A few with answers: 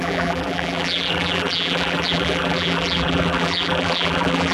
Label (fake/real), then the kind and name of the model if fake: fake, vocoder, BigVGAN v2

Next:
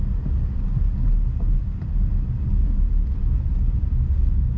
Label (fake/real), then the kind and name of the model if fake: real